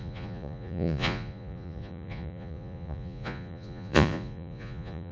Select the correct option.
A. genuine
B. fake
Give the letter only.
B